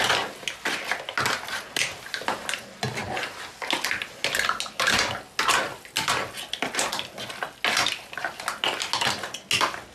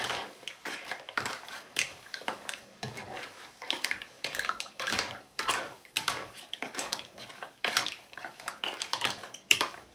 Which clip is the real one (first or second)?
first